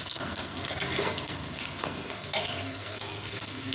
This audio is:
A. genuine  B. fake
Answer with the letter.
B